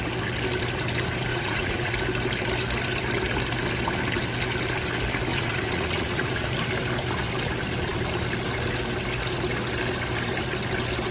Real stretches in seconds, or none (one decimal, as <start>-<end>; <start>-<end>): 0.0-1.3; 1.9-5.3; 6.5-11.1